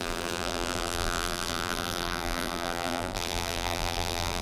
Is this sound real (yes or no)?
no